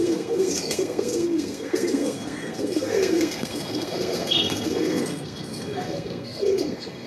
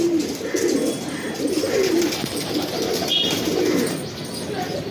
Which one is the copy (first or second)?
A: first